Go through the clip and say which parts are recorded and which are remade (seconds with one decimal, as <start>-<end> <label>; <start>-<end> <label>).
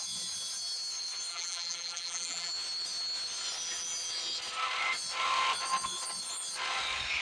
0.0-1.3 recorded; 1.3-2.5 remade; 2.5-7.2 recorded